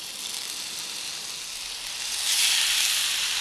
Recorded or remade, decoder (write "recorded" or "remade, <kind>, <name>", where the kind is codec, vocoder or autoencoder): recorded